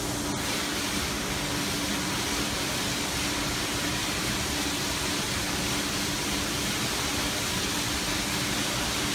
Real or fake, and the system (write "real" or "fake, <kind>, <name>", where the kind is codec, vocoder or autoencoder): real